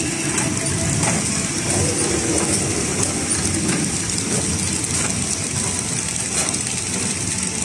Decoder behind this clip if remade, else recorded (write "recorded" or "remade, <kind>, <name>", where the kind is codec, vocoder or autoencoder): recorded